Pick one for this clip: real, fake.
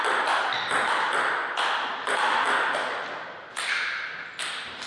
real